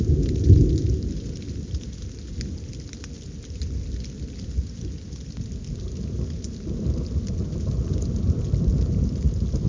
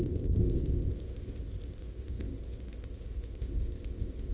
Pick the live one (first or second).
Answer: first